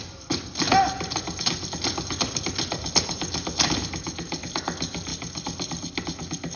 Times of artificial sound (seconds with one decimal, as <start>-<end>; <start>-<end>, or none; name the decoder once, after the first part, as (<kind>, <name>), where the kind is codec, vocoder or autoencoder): none